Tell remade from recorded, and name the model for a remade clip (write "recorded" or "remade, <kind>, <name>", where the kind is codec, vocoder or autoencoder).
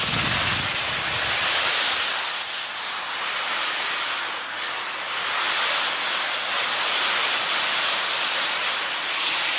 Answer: recorded